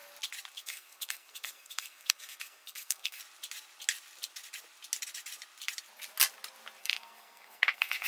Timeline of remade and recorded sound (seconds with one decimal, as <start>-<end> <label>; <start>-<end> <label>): 0.0-0.5 recorded; 0.5-3.2 remade; 3.2-6.8 recorded; 6.8-8.1 remade